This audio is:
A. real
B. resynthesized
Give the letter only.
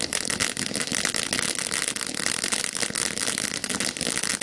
A